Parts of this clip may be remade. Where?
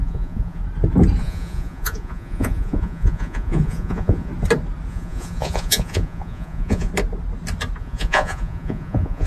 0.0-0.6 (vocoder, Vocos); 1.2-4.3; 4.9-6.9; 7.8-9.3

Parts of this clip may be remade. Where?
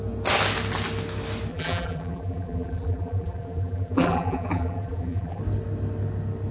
1.5-5.4 (vocoder, BigVGAN v2)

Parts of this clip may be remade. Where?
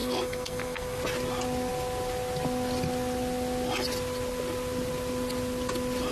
0.0-1.0 (codec, SNAC)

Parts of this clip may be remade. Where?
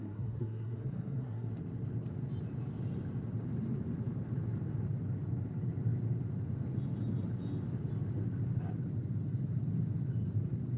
0.0-1.5 (codec, SNAC)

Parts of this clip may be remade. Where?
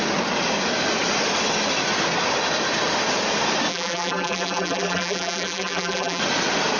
3.7-6.2 (vocoder, BigVGAN v2)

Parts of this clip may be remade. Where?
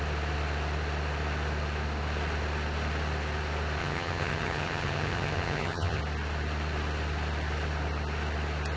3.8-6.0 (vocoder, HiFi-GAN)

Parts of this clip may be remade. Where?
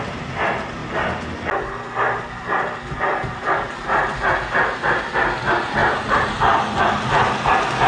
5.8-6.4 (vocoder, BigVGAN v2)